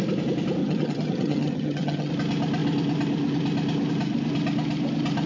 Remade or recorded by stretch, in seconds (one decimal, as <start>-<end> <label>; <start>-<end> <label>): 0.0-0.6 recorded; 0.6-2.1 remade; 2.1-5.3 recorded